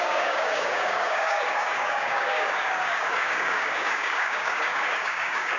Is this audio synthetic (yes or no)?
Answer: yes